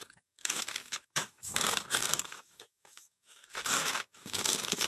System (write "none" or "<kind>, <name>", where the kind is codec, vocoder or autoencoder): codec, DAC